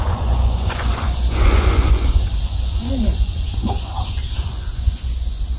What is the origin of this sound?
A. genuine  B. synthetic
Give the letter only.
B